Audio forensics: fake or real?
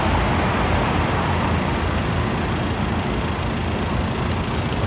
real